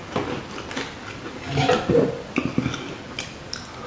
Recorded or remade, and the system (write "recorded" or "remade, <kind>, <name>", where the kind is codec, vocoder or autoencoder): recorded